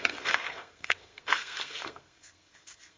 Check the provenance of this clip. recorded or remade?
remade